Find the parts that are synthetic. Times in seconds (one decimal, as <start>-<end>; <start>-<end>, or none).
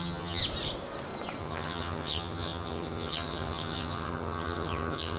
0.0-0.4; 1.4-5.2